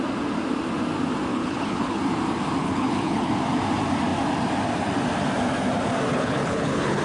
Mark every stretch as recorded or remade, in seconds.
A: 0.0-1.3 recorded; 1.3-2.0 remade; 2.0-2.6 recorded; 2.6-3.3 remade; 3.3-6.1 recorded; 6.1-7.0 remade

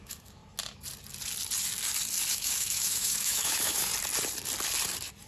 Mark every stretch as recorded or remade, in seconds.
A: 0.0-0.4 remade; 0.4-2.3 recorded; 2.3-3.9 remade; 3.9-5.3 recorded

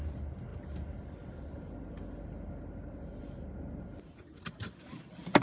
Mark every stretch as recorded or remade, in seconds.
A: 0.0-5.4 recorded

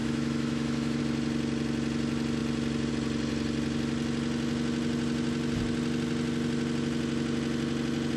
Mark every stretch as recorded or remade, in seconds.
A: 0.0-1.0 remade; 1.0-8.2 recorded

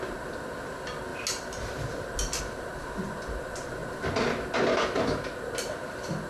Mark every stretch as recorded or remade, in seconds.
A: 0.0-6.3 recorded

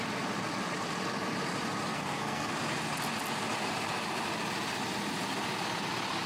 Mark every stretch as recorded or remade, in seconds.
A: 0.0-1.9 recorded; 1.9-2.5 remade; 2.5-6.3 recorded